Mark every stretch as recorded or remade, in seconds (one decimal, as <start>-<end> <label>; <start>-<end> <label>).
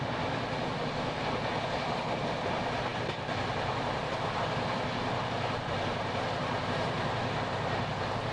0.0-8.3 recorded